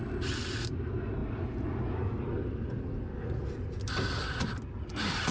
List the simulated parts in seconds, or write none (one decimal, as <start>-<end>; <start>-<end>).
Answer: none